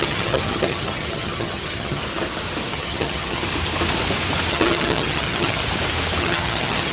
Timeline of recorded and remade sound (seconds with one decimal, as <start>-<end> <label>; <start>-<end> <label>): 0.0-2.0 remade; 2.0-2.7 recorded; 2.7-3.4 remade; 3.4-4.5 recorded; 4.5-5.6 remade; 5.6-6.2 recorded; 6.2-6.9 remade